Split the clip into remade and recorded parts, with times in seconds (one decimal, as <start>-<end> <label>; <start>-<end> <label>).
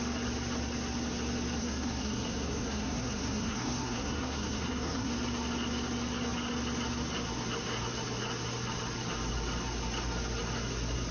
0.0-1.6 recorded; 1.6-5.1 remade; 5.1-11.1 recorded